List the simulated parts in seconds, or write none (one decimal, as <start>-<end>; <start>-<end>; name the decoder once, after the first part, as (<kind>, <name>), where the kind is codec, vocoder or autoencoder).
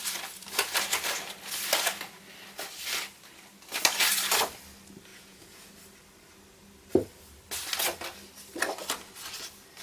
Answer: 5.1-5.7 (vocoder, Vocos)